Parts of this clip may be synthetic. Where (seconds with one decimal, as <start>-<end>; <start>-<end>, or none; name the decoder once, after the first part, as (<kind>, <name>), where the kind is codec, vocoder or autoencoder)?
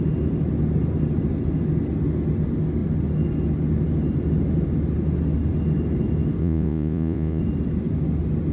6.4-7.4 (vocoder, Vocos)